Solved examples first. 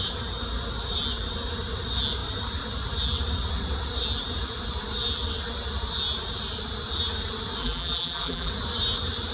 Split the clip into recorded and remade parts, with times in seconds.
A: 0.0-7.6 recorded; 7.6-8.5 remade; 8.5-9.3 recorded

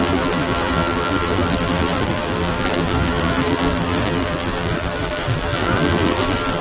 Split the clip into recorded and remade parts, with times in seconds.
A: 0.0-6.6 remade